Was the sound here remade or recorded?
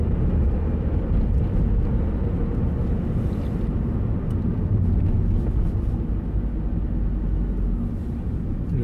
recorded